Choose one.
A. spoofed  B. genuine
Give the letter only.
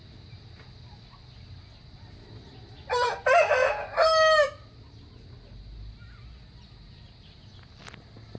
B